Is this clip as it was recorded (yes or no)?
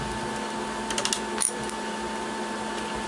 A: yes